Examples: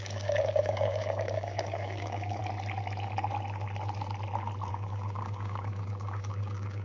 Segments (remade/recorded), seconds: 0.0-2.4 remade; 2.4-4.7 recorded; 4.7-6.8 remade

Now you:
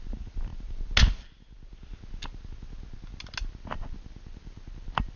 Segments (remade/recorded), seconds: 0.0-5.2 recorded

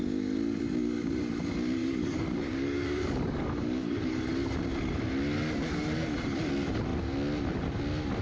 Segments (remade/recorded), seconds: 0.0-1.8 recorded; 1.8-4.3 remade; 4.3-8.2 recorded

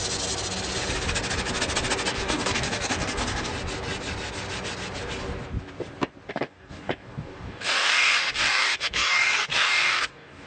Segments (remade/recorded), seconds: 0.0-2.1 recorded; 2.1-3.5 remade; 3.5-6.3 recorded; 6.3-10.5 remade

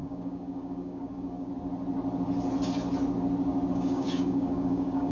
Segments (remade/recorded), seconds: 0.0-1.5 remade; 1.5-3.7 recorded; 3.7-5.1 remade

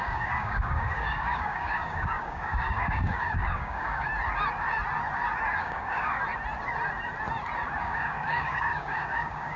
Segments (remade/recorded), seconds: 0.0-4.1 remade; 4.1-5.6 recorded; 5.6-6.2 remade; 6.2-7.8 recorded; 7.8-9.6 remade